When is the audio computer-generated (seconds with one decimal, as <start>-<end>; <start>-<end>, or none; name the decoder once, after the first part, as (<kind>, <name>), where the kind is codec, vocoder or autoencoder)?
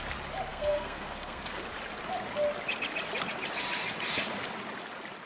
0.5-1.6 (codec, SNAC)